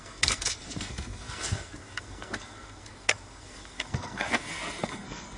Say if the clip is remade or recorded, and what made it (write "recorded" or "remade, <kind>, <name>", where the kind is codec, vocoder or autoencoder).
remade, codec, SNAC